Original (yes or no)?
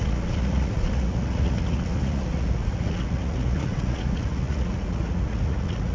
no